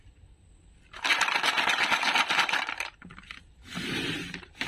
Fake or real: real